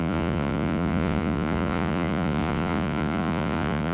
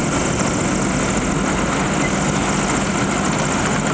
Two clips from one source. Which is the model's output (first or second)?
first